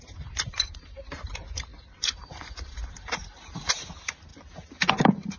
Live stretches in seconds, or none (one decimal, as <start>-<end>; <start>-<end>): none